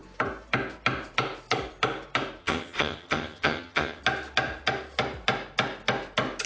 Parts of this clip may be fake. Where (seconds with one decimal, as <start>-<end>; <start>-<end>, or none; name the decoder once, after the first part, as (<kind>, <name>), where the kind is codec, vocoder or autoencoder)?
2.4-4.0 (vocoder, HiFi-GAN)